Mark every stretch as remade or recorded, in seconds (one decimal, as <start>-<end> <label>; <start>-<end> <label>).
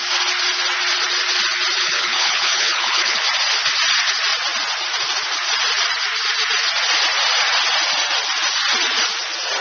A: 0.0-1.8 recorded; 1.8-3.2 remade; 3.2-9.6 recorded